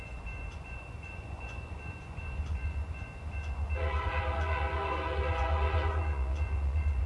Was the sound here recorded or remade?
remade